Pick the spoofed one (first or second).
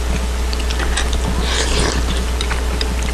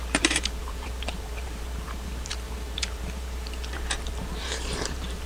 second